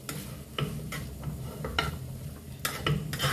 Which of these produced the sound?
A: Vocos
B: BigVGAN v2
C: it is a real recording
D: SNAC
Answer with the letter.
C